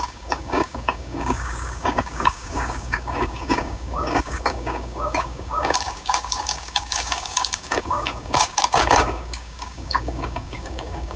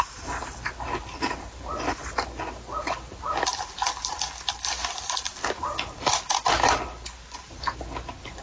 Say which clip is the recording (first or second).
second